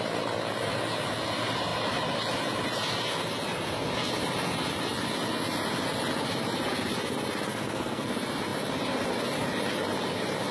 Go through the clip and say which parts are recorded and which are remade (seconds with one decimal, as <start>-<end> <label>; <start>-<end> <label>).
0.0-7.5 recorded; 7.5-8.1 remade; 8.1-10.5 recorded